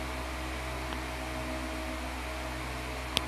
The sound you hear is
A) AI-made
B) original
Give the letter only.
B